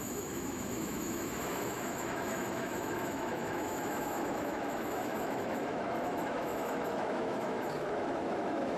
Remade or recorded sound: remade